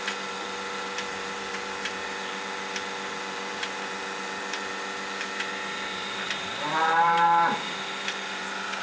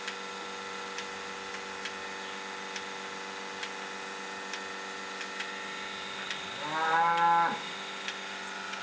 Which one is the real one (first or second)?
second